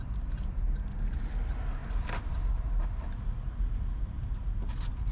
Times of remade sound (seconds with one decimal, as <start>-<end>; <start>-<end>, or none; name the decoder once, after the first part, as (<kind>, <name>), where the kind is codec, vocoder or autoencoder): 1.8-5.1 (vocoder, BigVGAN v2)